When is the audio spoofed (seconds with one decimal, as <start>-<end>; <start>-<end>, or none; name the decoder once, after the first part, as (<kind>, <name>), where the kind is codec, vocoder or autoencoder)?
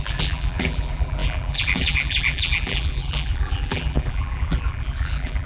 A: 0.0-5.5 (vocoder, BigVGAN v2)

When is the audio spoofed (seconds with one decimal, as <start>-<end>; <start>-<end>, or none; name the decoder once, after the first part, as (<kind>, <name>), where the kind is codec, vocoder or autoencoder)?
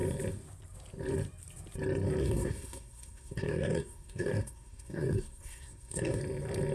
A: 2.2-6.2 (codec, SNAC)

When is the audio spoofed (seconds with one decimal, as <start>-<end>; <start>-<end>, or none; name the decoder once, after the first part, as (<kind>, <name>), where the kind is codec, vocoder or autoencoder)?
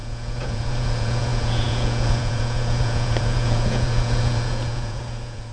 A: 0.0-5.5 (vocoder, Vocos)